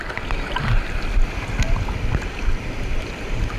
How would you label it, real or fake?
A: real